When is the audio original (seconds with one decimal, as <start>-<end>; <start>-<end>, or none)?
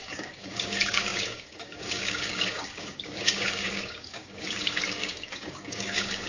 none